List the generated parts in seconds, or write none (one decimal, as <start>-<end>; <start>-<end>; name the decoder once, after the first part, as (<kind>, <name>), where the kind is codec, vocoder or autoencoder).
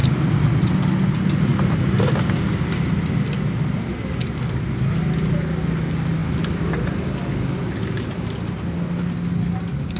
none